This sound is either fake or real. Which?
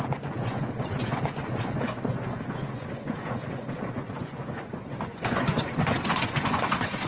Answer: fake